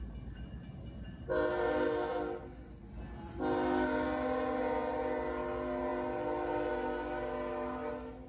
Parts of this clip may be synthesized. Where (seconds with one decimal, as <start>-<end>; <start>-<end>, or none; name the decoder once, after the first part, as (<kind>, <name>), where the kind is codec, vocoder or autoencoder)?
none